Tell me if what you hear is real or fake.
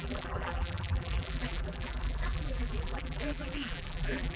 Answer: fake